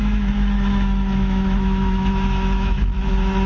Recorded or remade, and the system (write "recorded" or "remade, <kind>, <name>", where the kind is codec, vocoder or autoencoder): remade, autoencoder, DAC-VAE